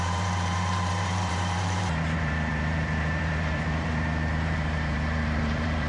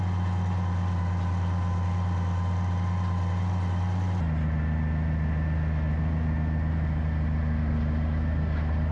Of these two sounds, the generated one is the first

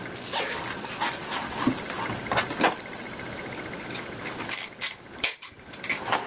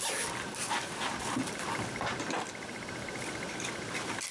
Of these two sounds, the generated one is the second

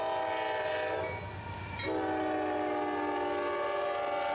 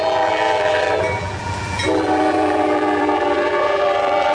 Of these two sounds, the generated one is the second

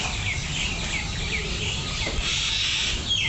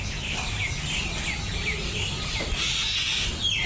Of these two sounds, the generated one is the first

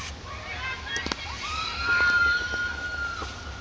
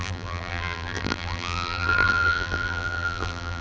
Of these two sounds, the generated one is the second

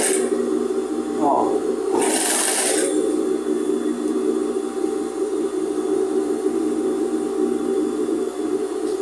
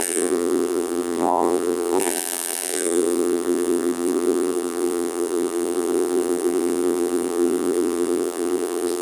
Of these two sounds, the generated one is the second